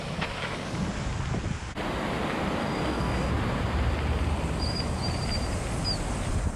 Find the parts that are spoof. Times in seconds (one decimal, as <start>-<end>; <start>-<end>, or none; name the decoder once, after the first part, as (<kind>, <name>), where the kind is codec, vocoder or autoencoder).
2.6-3.3 (codec, DAC)